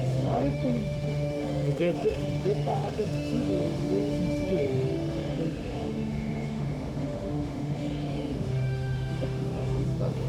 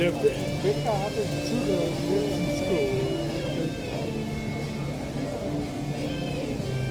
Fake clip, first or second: first